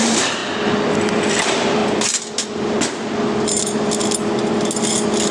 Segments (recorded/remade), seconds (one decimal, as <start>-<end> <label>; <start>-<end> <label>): 0.0-0.4 remade; 0.4-1.3 recorded; 1.3-1.8 remade; 1.8-5.3 recorded